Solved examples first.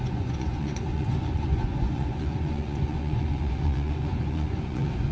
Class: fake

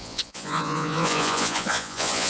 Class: fake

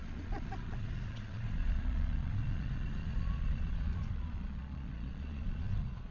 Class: fake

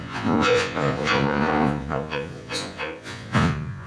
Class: fake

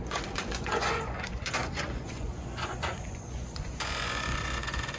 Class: fake